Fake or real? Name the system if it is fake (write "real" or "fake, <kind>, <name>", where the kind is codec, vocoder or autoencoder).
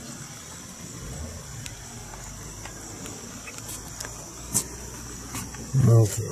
real